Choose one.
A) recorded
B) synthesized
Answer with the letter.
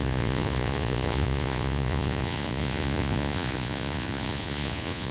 B